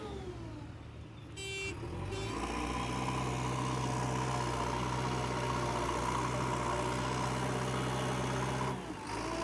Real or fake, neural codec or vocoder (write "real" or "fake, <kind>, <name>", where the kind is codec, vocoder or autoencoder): real